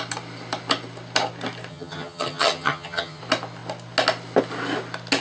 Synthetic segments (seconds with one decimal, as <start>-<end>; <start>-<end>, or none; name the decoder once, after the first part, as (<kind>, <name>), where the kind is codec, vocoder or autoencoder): 1.7-3.2 (vocoder, HiFi-GAN)